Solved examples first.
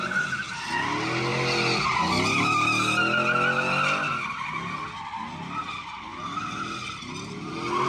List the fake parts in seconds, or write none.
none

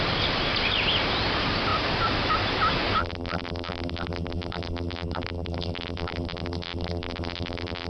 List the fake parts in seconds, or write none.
3.0-7.9

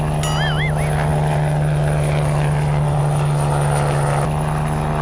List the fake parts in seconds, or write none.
1.1-3.0

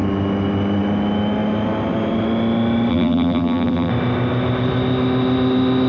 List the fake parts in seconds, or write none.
2.9-3.9

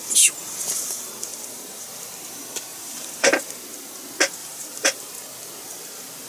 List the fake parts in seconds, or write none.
1.3-1.9; 2.7-3.4; 4.4-5.1

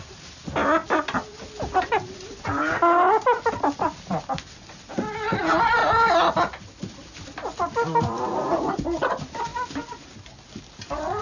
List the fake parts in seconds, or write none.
5.8-9.1

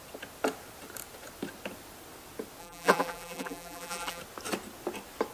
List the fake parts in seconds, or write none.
2.6-4.2

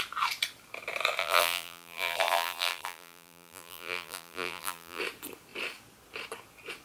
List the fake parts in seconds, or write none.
1.2-5.0